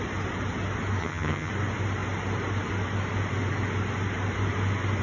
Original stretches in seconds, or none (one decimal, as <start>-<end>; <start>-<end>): 0.0-1.0; 1.5-5.0